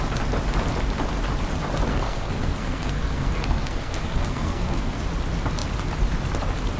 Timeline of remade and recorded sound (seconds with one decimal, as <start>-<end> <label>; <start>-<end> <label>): 0.0-1.9 recorded; 1.9-5.0 remade; 5.0-6.8 recorded